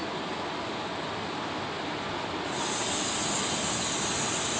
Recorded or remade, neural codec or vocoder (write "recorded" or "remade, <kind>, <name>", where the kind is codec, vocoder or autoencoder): recorded